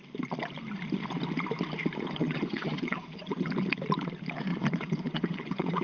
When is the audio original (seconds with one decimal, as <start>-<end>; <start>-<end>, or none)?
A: 0.0-2.2; 3.5-4.5